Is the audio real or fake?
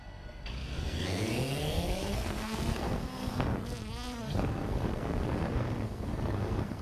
fake